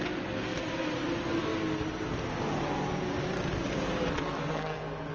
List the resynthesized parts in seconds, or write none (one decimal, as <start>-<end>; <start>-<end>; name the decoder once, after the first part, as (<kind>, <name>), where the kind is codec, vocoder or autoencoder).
4.4-5.1 (codec, SNAC)